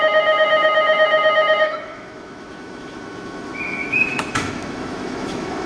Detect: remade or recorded remade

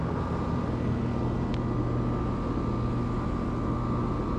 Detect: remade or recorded recorded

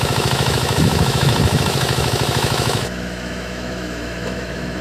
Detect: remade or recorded remade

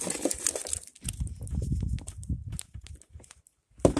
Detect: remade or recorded recorded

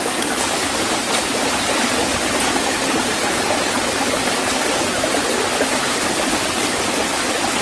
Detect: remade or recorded recorded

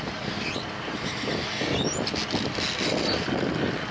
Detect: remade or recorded recorded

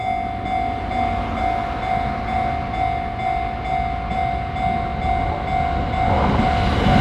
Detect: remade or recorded recorded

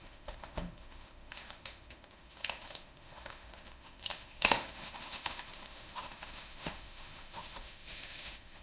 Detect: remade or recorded remade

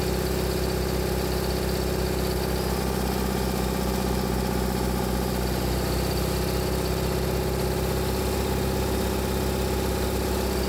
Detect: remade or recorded recorded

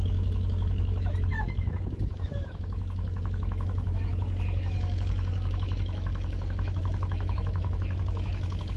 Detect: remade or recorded remade